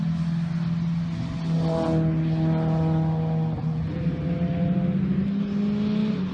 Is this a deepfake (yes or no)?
no